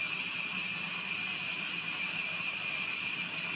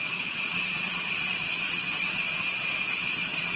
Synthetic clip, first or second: second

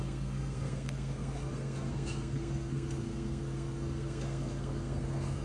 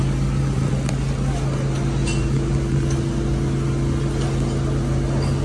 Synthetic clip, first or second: first